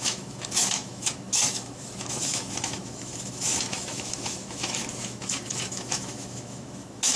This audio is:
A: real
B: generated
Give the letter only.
B